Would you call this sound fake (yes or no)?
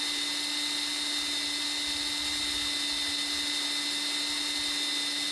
no